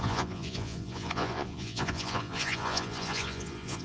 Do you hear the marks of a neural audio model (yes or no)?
yes